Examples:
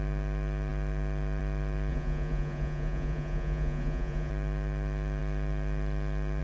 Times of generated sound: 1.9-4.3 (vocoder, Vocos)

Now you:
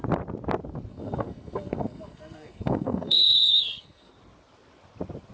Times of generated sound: 0.9-4.1 (codec, SNAC)

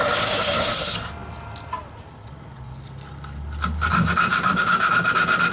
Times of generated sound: 0.0-0.7 (codec, DAC); 4.3-4.9

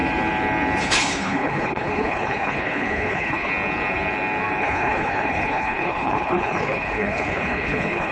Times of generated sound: 0.8-3.5 (codec, HILCodec); 4.6-8.1

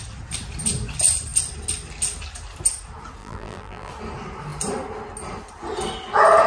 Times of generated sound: 3.2-3.9 (vocoder, BigVGAN v2)

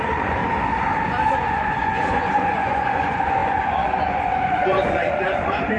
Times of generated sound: 0.0-0.4 (vocoder, Vocos); 1.3-5.8

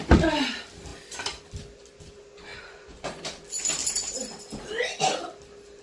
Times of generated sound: 2.5-3.2 (vocoder, Vocos)